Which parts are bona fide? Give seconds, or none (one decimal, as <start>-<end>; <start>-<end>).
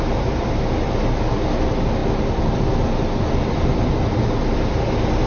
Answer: 0.0-5.3